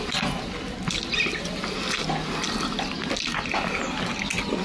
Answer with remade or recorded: recorded